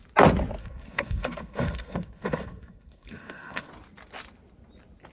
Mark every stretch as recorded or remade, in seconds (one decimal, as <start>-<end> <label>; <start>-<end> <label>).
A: 0.0-0.6 recorded; 0.6-3.7 remade; 3.7-5.1 recorded